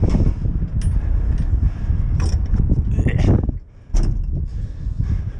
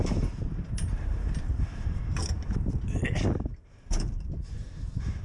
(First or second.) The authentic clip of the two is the first